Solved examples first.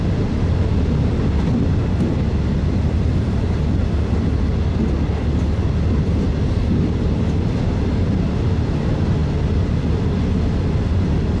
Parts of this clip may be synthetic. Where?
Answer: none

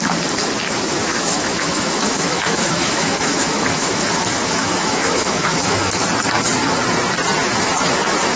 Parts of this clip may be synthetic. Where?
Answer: 1.0-6.0; 7.4-8.4

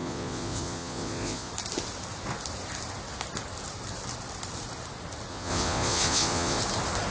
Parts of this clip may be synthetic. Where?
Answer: 0.0-1.5; 5.3-6.6

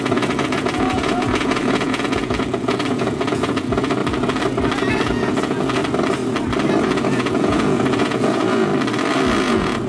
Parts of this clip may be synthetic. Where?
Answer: 0.0-4.0; 4.9-5.8; 6.8-8.7; 9.4-9.9